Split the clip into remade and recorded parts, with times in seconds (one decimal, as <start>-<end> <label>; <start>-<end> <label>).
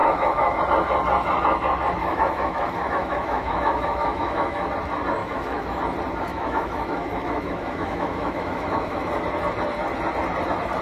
0.0-0.6 remade; 0.6-2.0 recorded; 2.0-4.7 remade; 4.7-5.2 recorded; 5.2-5.8 remade; 5.8-6.3 recorded; 6.3-9.1 remade; 9.1-10.8 recorded